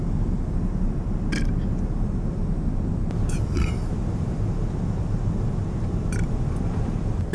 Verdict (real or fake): real